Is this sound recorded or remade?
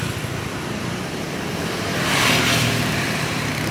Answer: remade